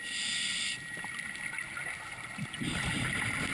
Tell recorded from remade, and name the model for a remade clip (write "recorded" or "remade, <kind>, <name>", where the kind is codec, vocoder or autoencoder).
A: recorded